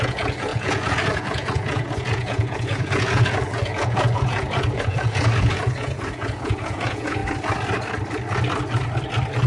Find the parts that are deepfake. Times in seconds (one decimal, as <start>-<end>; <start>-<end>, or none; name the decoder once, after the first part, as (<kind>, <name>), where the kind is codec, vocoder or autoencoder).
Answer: 0.0-7.2 (vocoder, Vocos)